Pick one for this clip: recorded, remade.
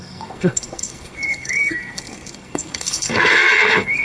remade